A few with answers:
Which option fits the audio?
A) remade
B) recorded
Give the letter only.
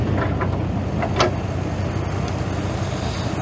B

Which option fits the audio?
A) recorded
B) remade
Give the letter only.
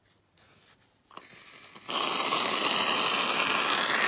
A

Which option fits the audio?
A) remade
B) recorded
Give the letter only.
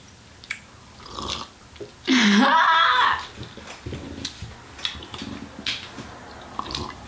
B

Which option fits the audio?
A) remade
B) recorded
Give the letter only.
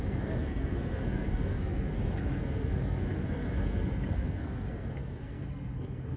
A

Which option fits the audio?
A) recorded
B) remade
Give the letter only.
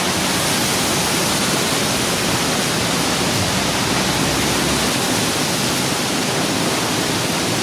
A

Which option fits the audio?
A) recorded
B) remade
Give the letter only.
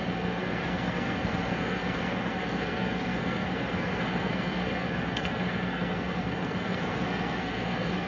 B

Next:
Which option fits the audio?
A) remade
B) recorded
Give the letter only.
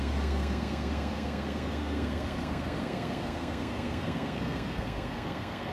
A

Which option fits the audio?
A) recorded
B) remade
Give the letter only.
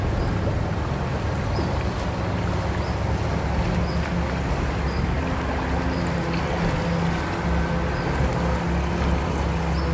A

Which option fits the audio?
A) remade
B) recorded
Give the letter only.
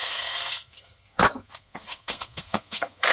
A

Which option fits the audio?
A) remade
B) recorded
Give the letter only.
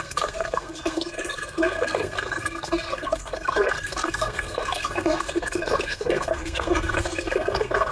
A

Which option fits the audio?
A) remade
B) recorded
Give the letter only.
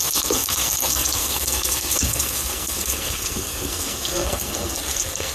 A